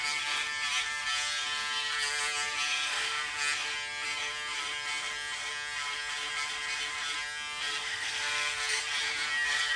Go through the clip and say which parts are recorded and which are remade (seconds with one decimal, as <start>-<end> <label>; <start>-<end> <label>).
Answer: 0.0-7.8 recorded; 7.8-8.8 remade; 8.8-9.8 recorded